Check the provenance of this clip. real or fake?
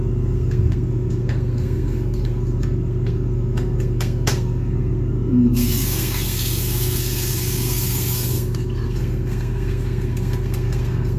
fake